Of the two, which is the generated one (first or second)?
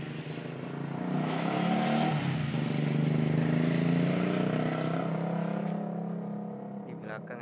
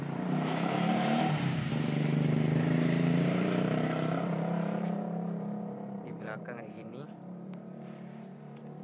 second